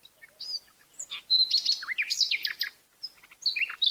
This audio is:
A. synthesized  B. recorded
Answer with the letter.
B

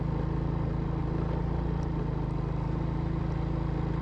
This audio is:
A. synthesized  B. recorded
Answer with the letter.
B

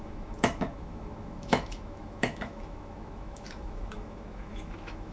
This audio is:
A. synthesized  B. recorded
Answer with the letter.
A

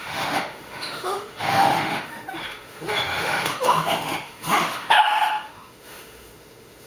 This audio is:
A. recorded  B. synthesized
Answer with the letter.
B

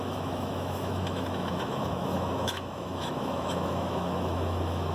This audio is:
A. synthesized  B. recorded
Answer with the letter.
A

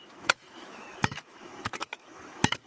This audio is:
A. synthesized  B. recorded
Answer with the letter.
A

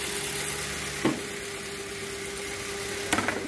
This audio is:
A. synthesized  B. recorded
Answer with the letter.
B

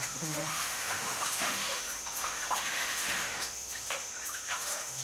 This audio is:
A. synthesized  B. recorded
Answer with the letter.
A